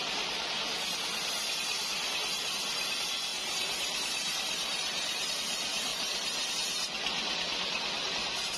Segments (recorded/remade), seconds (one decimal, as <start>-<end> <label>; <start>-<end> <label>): 0.0-3.3 recorded; 3.3-5.3 remade; 5.3-5.9 recorded; 5.9-6.5 remade; 6.5-8.6 recorded